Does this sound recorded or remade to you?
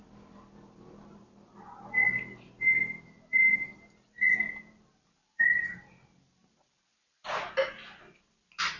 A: recorded